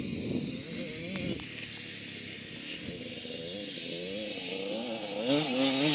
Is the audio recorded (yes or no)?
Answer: yes